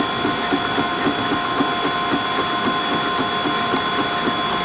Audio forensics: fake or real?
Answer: real